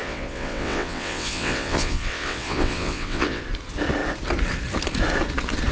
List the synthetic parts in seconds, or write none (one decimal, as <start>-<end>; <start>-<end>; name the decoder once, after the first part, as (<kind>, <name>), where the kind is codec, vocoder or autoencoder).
0.0-3.4 (vocoder, WaveNeXt)